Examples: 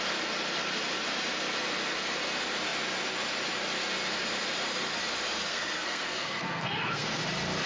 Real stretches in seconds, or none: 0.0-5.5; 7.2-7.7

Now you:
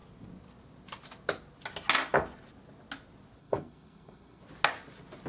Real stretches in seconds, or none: 0.0-3.4; 4.4-5.3

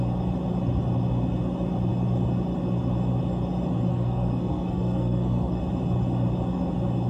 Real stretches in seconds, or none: 0.0-3.9; 5.6-7.1

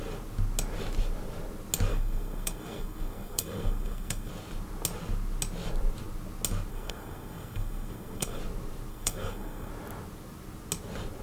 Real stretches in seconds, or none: 0.0-1.9; 4.3-6.7; 8.4-8.9; 9.7-11.2

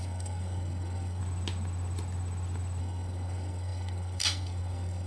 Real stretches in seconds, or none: 1.2-2.8

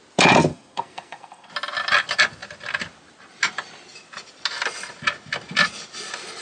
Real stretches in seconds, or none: 0.0-0.5; 1.5-6.4

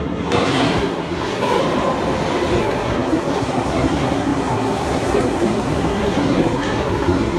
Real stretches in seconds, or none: 1.6-2.6